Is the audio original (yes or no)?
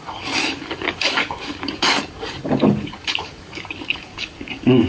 no